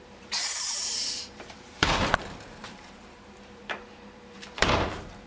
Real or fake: fake